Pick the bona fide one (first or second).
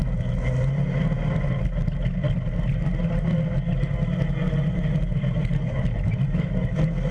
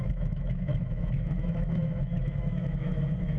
first